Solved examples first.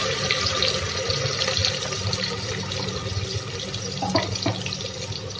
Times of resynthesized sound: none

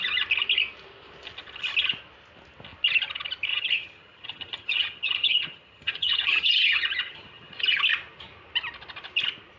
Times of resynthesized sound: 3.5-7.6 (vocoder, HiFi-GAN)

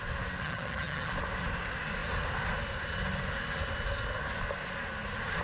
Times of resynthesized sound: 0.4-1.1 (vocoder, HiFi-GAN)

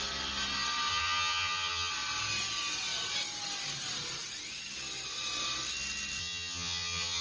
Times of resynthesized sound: 0.9-1.9 (vocoder, HiFi-GAN); 6.2-7.2

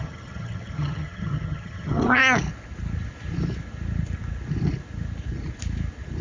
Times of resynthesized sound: 0.0-2.2 (vocoder, HiFi-GAN)

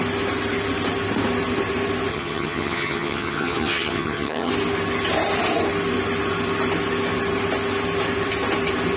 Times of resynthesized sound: 2.1-4.5 (vocoder, HiFi-GAN)